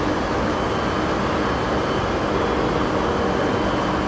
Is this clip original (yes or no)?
yes